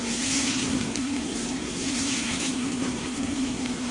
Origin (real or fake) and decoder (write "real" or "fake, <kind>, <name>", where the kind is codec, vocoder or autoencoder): fake, codec, SNAC